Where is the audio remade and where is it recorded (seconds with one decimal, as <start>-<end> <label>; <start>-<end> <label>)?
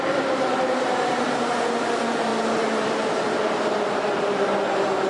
0.0-5.1 recorded